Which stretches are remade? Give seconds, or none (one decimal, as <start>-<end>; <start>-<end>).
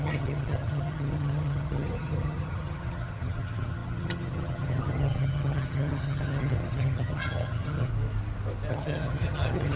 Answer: 0.0-7.9; 8.7-9.8